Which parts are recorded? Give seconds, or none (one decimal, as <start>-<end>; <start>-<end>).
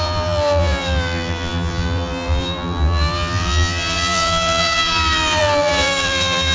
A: none